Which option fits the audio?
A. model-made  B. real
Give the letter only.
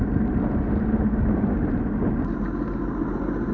B